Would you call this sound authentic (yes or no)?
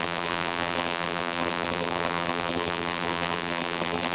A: no